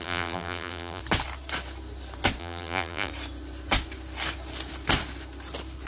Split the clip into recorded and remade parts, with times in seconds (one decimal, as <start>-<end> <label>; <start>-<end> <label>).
0.0-1.0 remade; 1.0-2.4 recorded; 2.4-3.1 remade; 3.1-5.9 recorded